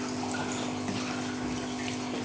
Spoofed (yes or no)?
no